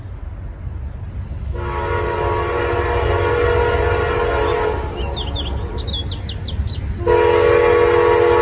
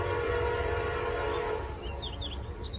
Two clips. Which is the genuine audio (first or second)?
first